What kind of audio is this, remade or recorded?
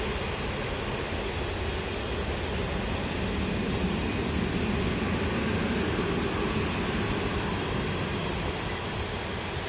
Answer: recorded